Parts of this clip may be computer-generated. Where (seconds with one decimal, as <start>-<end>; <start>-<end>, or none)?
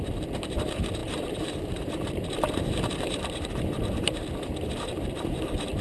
0.0-5.8